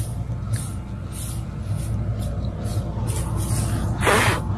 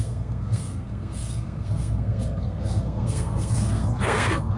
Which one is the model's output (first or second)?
second